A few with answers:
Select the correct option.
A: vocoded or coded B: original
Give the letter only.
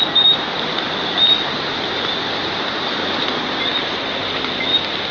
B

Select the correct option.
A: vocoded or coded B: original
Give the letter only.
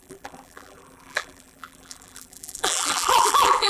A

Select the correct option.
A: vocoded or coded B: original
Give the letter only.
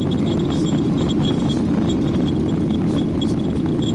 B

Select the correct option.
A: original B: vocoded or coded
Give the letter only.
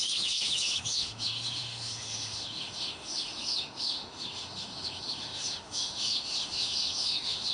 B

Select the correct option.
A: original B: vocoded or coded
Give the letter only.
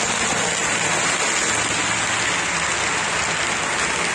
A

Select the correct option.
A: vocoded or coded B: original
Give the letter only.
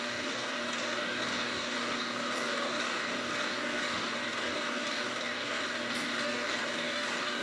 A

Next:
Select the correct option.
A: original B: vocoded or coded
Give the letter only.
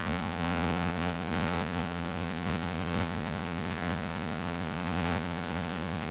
B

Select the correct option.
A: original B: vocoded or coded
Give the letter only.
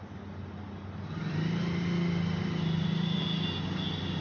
A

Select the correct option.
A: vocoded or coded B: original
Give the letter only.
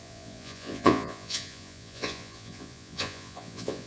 A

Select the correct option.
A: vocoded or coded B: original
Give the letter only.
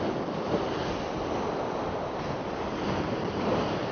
B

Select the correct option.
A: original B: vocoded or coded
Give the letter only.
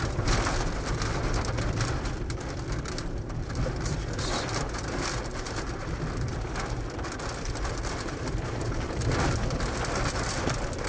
B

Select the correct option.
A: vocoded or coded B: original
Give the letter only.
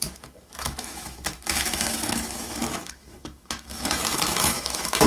A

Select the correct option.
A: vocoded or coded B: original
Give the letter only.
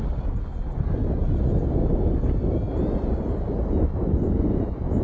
B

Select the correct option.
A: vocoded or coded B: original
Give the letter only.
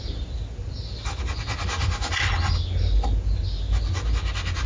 B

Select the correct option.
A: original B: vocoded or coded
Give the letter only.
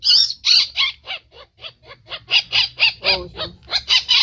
A